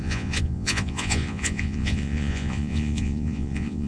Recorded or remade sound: remade